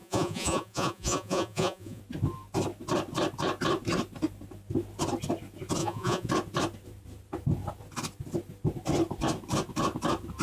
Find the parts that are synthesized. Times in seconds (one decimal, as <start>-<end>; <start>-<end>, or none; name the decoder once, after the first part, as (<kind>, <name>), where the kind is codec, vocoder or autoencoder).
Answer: 0.0-2.0 (vocoder, Vocos); 5.8-6.3